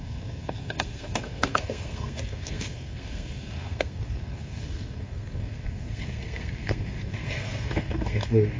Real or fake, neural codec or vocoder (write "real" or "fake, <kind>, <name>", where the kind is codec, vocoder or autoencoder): fake, codec, SNAC